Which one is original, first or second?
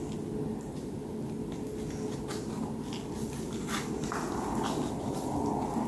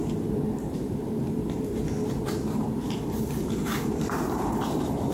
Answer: first